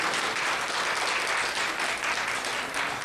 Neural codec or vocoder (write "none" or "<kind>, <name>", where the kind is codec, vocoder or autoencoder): none